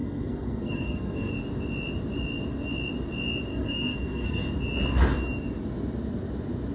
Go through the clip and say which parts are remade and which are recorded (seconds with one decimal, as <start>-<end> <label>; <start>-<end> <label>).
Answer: 0.0-1.3 remade; 1.3-3.5 recorded; 3.5-4.5 remade; 4.5-6.7 recorded